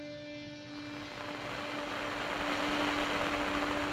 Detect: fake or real real